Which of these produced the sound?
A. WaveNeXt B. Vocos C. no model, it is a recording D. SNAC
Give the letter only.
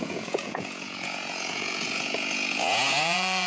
B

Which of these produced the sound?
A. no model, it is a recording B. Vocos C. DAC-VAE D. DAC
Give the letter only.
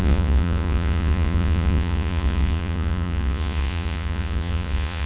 B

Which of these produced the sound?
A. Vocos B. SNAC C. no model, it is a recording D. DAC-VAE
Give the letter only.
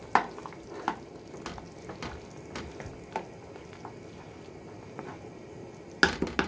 C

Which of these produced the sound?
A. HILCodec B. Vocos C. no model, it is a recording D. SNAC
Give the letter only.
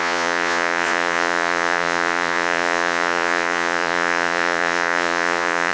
B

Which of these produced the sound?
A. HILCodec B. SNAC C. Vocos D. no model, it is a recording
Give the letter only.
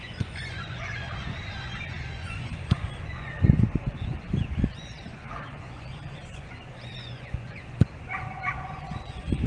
C